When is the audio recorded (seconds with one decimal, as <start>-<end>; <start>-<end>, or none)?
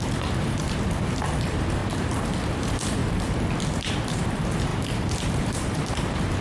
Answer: 3.0-3.7